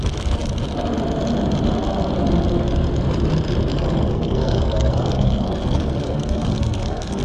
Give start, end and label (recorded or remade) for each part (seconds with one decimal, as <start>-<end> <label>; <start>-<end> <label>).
0.0-3.7 recorded; 3.7-7.2 remade